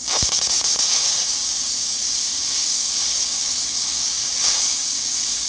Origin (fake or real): fake